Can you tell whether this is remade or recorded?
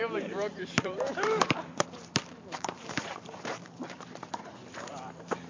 remade